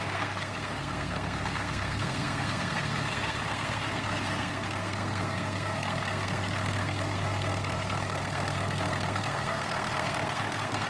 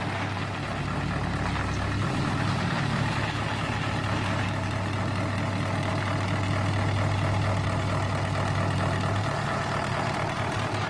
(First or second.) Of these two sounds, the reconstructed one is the first